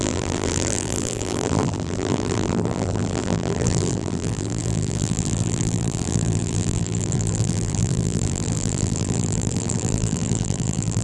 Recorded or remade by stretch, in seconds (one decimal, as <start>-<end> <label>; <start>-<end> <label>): 0.0-11.0 remade